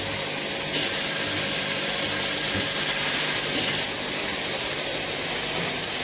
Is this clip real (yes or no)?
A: yes